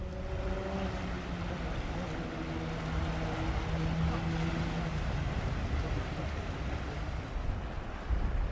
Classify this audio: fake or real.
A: real